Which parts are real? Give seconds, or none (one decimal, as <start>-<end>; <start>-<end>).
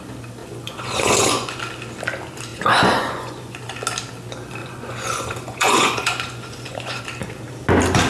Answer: 0.0-0.4; 1.6-2.5; 3.6-4.6; 7.0-8.1